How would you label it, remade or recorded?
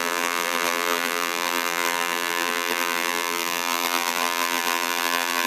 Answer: remade